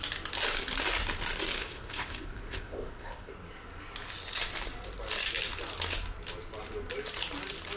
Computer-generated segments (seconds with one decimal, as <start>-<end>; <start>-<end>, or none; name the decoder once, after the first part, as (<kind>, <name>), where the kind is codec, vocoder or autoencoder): 1.6-3.3 (codec, ZipCodec)